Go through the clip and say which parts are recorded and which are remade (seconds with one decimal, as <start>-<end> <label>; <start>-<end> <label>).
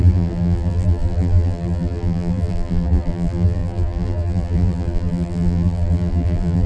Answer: 0.0-6.7 remade